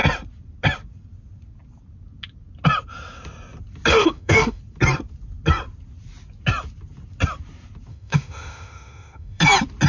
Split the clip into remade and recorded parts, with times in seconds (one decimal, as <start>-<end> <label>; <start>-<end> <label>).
0.0-3.9 recorded; 3.9-4.6 remade; 4.6-7.9 recorded; 7.9-9.4 remade; 9.4-9.9 recorded